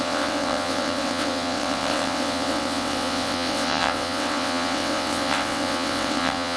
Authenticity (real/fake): fake